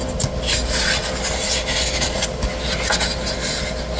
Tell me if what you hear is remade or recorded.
recorded